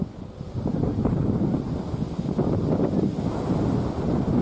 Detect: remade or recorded recorded